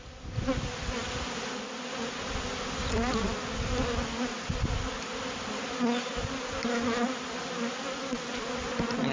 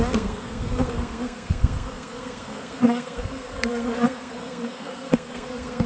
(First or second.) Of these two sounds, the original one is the first